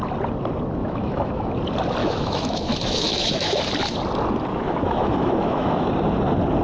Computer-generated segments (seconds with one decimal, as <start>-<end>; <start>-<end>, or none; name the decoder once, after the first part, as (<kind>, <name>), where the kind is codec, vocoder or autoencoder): 0.8-1.5 (autoencoder, DAC-VAE); 2.0-3.6; 4.5-5.9